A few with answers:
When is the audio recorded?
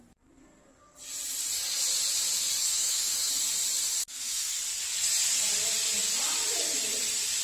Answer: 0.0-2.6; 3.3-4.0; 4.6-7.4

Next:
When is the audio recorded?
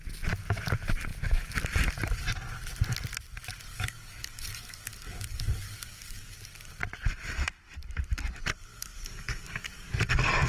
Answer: 0.0-3.7; 6.6-8.7; 10.1-10.5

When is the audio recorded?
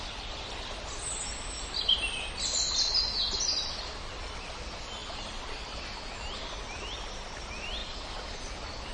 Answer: 0.0-5.0; 6.4-8.9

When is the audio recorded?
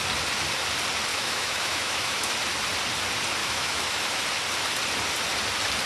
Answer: 0.0-1.1; 2.4-3.4; 4.2-5.9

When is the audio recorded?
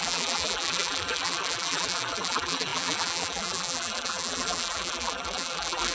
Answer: none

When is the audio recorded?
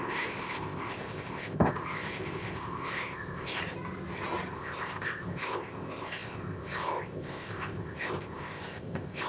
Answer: 3.6-4.5